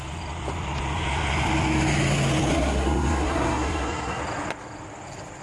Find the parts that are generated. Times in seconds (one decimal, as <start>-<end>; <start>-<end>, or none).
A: 2.5-4.2